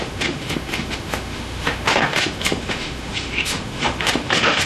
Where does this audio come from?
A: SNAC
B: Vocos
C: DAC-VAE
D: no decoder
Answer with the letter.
C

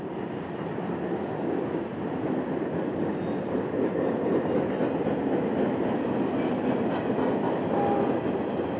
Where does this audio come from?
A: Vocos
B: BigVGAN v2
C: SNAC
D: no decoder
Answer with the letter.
D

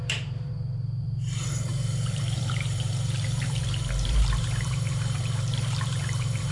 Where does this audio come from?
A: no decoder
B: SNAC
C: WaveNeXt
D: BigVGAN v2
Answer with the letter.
D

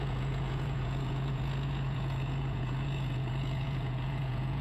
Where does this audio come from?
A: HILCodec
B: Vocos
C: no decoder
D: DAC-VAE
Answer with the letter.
B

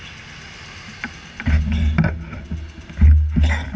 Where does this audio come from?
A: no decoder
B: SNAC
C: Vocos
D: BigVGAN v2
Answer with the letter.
A